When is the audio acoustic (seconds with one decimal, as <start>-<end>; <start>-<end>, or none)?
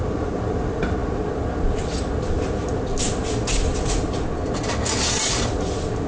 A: 0.0-6.1